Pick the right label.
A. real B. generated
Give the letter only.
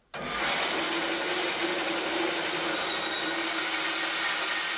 A